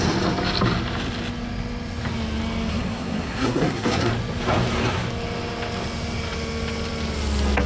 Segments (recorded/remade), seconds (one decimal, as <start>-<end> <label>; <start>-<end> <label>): 0.0-2.7 recorded; 2.7-4.1 remade; 4.1-7.7 recorded